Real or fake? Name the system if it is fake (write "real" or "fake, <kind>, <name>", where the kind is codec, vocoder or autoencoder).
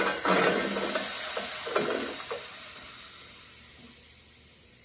real